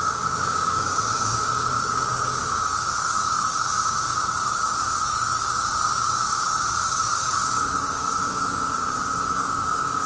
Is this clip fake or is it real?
fake